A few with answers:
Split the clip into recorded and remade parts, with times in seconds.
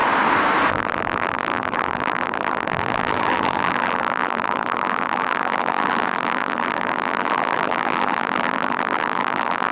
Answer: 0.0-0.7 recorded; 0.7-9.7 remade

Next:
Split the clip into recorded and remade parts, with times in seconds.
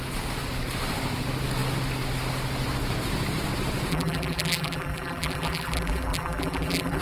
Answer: 0.0-3.9 recorded; 3.9-7.0 remade